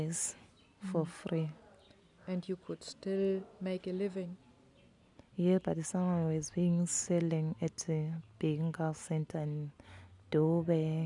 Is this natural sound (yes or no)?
yes